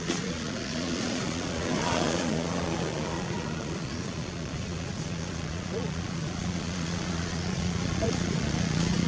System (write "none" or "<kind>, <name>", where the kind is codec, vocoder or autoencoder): vocoder, Vocos